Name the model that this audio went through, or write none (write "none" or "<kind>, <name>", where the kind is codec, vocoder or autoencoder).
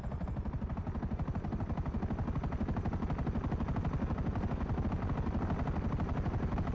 none